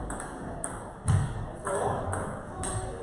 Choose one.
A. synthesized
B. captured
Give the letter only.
A